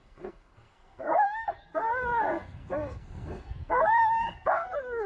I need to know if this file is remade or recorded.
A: remade